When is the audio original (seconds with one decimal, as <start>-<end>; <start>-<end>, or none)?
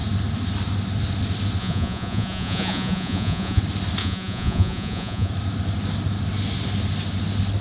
0.0-1.6; 3.6-4.0; 5.3-7.6